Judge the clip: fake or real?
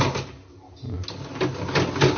real